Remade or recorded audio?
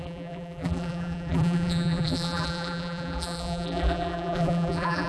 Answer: remade